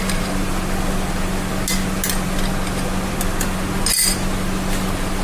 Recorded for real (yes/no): yes